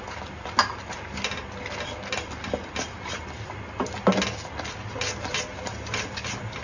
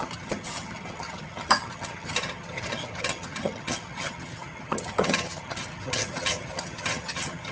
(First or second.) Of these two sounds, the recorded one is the first